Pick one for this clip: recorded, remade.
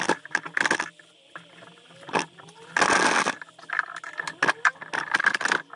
recorded